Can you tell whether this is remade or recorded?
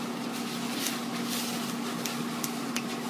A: recorded